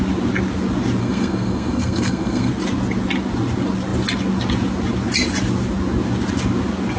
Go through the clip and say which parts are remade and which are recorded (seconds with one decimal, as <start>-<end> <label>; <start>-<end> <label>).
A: 0.0-1.0 recorded; 1.0-2.5 remade; 2.5-7.0 recorded